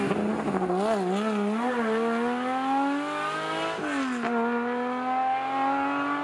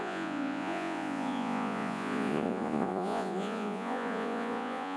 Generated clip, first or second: second